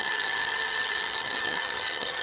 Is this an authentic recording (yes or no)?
no